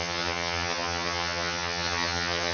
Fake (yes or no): yes